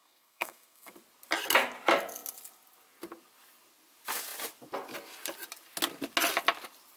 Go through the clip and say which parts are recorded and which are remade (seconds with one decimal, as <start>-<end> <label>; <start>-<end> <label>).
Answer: 0.0-0.9 remade; 0.9-7.0 recorded